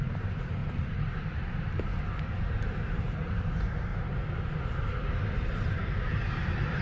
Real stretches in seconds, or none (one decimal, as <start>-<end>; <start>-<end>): 0.6-1.2; 1.9-2.4; 3.9-4.8